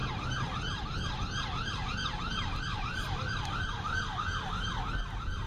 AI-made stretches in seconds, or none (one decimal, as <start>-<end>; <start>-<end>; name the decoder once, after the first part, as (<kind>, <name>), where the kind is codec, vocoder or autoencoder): none